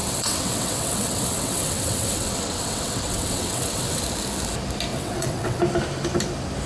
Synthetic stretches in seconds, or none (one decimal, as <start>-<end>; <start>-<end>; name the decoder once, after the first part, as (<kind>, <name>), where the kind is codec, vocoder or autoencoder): 0.0-4.0 (vocoder, WaveNeXt); 4.9-5.6